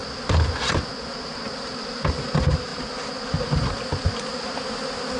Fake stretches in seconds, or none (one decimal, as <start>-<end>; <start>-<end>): none